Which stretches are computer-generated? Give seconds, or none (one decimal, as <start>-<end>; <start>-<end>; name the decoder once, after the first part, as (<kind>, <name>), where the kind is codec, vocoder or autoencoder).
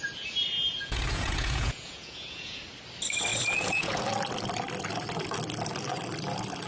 0.7-2.6 (vocoder, Vocos); 3.3-4.0